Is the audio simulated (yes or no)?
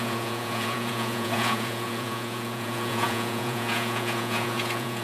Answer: yes